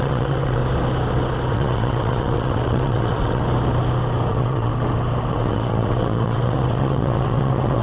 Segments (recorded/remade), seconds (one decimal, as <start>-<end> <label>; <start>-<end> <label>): 0.0-0.6 remade; 0.6-1.5 recorded; 1.5-3.4 remade; 3.4-4.3 recorded; 4.3-4.7 remade; 4.7-5.3 recorded; 5.3-7.8 remade